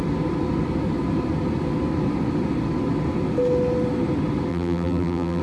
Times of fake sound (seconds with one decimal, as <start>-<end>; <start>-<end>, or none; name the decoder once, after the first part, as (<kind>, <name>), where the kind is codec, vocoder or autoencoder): 4.5-5.4 (vocoder, BigVGAN v2)

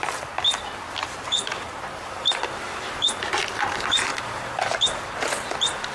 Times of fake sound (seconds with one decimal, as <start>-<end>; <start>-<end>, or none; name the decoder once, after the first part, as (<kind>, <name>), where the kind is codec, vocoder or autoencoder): 1.0-2.9 (vocoder, BigVGAN v2); 4.1-5.1

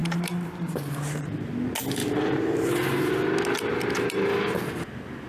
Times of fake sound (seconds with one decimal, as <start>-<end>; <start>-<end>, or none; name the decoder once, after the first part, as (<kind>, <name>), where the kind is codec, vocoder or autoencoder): 0.0-1.5 (vocoder, BigVGAN v2); 2.0-3.1

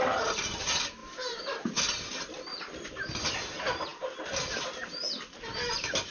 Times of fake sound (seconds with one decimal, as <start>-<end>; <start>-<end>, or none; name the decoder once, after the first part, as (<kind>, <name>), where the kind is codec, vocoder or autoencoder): 1.0-1.7 (vocoder, BigVGAN v2)